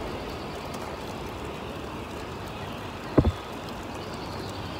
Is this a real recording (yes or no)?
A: yes